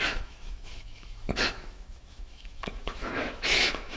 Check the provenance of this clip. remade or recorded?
remade